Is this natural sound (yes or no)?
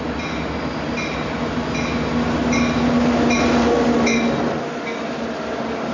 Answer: yes